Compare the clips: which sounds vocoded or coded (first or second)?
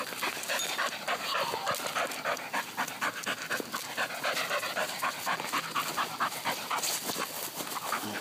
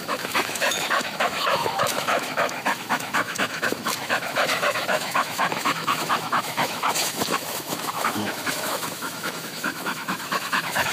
second